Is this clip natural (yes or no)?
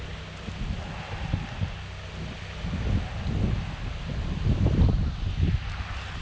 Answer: yes